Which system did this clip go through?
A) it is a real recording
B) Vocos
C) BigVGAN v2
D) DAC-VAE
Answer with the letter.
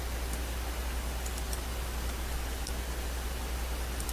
A